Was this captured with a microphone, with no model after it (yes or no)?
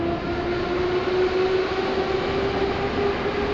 yes